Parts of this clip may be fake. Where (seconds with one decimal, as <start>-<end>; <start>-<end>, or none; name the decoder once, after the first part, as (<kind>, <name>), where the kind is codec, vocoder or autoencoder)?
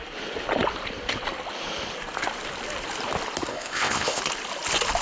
3.5-4.2 (codec, ZipCodec)